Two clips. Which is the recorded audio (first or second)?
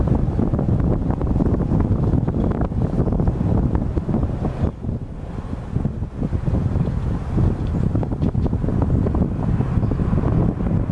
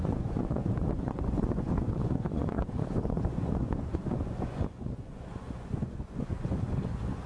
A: first